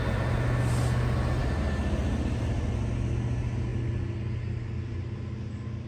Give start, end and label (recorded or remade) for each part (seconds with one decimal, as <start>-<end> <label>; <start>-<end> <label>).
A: 0.0-5.9 recorded